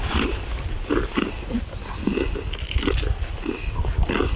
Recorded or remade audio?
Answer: recorded